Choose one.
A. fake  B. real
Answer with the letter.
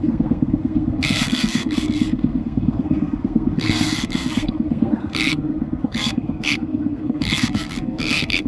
A